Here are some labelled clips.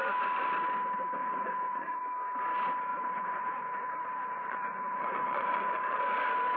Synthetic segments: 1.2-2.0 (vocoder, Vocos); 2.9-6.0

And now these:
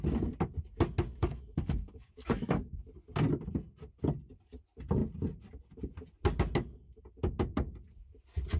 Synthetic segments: 1.2-2.7 (codec, DAC)

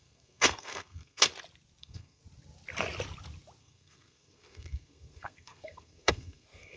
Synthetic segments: 0.0-1.3 (codec, SNAC); 1.8-2.2; 3.6-6.8

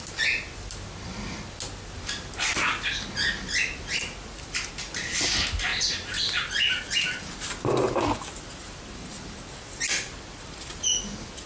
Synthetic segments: 5.7-6.8 (vocoder, BigVGAN v2)

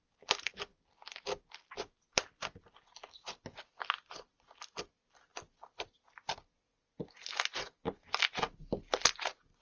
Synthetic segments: none

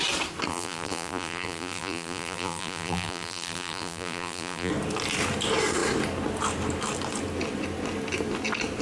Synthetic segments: 0.5-4.7 (vocoder, BigVGAN v2)